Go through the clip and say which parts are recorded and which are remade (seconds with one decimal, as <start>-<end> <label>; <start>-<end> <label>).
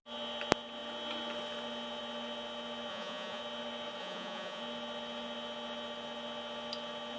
0.0-2.9 recorded; 2.9-3.4 remade; 3.4-4.0 recorded; 4.0-4.6 remade; 4.6-7.2 recorded